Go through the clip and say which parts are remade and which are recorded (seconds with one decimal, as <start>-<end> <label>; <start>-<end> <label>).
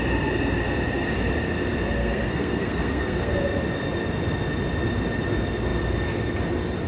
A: 0.0-2.0 recorded; 2.0-3.4 remade; 3.4-6.9 recorded